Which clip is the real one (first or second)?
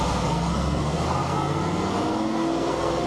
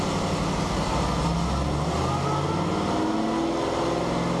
second